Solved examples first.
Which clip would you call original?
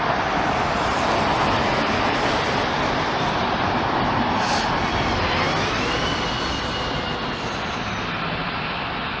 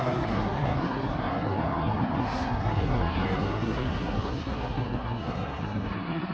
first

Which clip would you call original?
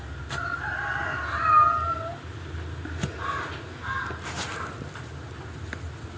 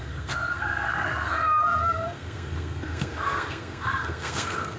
first